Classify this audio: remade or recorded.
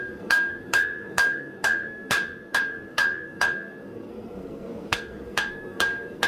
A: remade